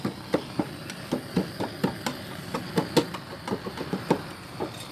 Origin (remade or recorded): recorded